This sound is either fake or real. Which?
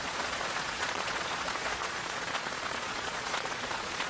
fake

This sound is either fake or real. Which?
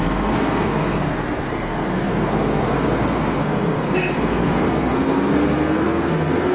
fake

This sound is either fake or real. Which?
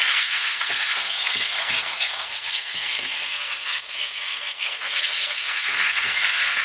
fake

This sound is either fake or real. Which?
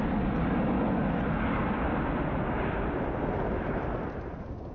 real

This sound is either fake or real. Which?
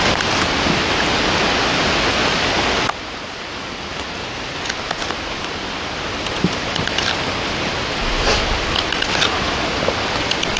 real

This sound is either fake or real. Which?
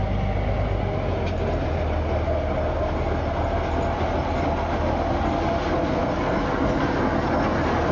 real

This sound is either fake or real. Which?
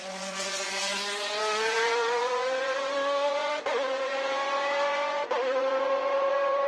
fake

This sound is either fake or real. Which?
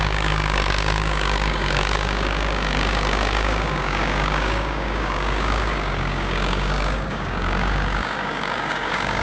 fake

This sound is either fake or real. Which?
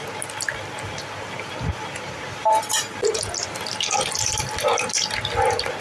real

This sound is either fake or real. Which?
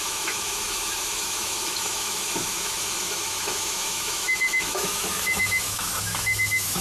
fake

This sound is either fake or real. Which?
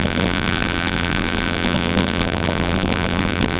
fake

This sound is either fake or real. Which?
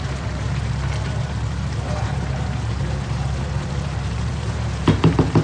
fake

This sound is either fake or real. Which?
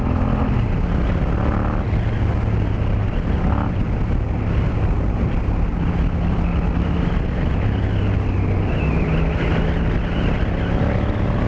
real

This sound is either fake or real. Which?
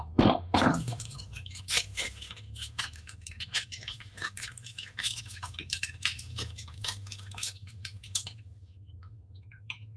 fake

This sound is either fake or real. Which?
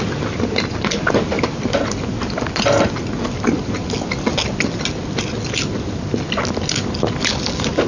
real